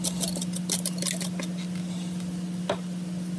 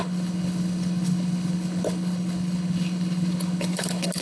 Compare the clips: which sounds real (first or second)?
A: first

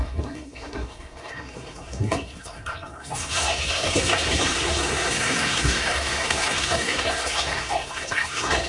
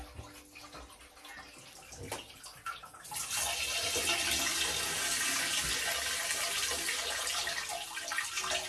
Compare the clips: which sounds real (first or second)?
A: second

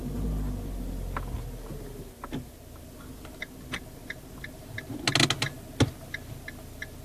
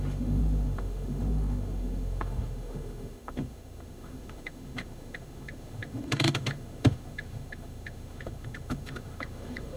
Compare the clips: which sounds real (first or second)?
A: first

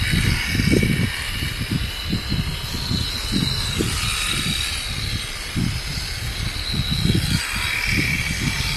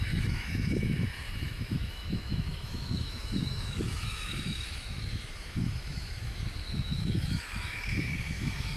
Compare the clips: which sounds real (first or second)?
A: first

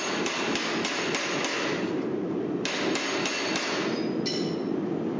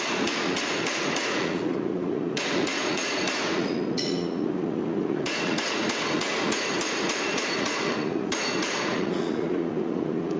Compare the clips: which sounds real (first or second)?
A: first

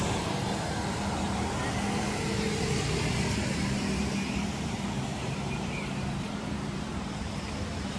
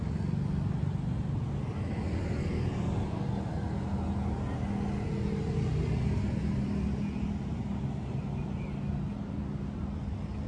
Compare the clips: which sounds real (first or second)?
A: second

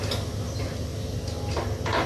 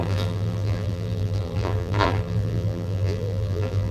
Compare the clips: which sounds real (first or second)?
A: first